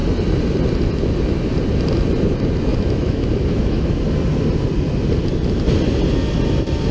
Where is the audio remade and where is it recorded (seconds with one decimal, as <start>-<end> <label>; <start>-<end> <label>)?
0.0-2.7 recorded; 2.7-3.9 remade; 3.9-6.9 recorded